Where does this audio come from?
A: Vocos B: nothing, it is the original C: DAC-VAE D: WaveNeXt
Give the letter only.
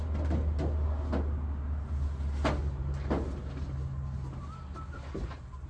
B